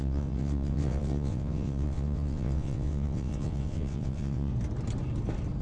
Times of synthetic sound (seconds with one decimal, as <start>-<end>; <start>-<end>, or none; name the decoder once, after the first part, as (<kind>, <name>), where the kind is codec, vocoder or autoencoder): 0.0-4.5 (vocoder, WaveNeXt)